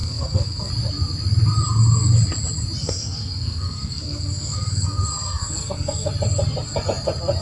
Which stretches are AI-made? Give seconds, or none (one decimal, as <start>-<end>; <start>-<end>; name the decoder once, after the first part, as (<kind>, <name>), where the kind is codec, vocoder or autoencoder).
0.0-0.7 (codec, SNAC); 2.8-6.1